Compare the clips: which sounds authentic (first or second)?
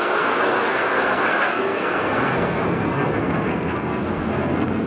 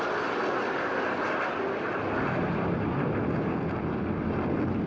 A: second